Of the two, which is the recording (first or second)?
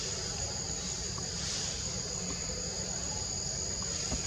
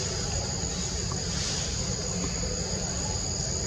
second